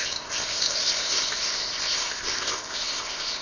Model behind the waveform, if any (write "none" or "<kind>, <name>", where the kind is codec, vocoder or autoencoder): codec, ZipCodec